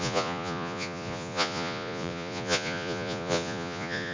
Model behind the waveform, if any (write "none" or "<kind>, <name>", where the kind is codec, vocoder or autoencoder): vocoder, Vocos